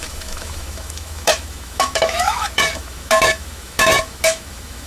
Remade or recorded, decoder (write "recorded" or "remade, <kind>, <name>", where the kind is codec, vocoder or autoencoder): remade, autoencoder, DAC-VAE